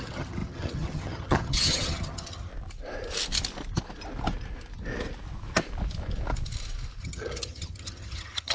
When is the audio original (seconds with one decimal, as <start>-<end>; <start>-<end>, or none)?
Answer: 2.5-7.0